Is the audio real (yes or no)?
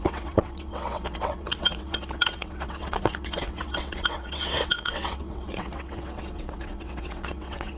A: no